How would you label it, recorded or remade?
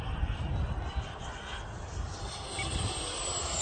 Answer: recorded